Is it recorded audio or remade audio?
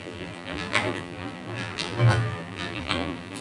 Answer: remade